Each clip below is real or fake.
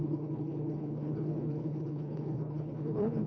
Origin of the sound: fake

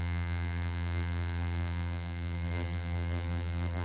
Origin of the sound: fake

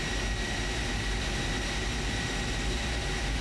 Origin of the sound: real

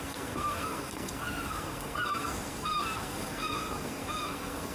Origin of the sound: fake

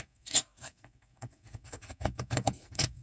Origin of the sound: fake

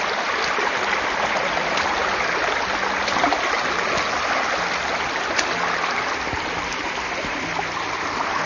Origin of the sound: real